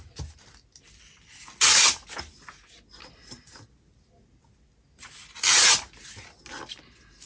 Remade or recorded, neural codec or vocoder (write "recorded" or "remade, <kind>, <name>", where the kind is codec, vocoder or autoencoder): recorded